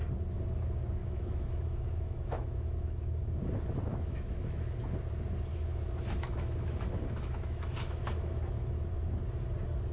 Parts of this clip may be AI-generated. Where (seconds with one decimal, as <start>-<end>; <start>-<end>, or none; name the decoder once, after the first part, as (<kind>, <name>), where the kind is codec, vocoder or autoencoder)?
1.0-3.4 (autoencoder, DAC-VAE); 3.9-4.8; 5.5-8.9